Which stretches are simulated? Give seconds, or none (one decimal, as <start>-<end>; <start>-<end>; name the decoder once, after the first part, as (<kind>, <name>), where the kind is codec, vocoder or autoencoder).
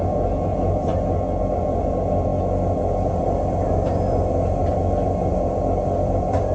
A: 0.0-0.9 (vocoder, BigVGAN v2); 1.4-2.3; 5.3-6.5